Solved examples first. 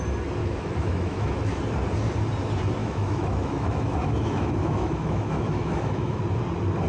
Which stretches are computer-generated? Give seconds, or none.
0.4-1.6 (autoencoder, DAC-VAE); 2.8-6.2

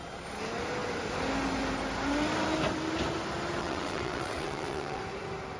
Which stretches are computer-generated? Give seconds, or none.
3.6-5.0 (vocoder, WaveNeXt)

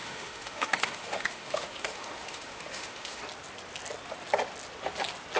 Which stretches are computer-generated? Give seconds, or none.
0.0-3.2 (autoencoder, DAC-VAE)

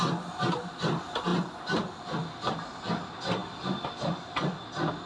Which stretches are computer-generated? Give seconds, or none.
none

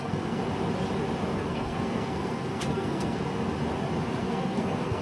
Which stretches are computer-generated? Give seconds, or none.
0.0-0.4 (codec, SNAC); 1.4-3.3; 4.2-5.0